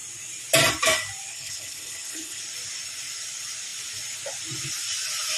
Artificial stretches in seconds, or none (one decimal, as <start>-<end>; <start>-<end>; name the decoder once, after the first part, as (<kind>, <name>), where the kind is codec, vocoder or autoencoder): 1.3-2.4 (codec, HILCodec)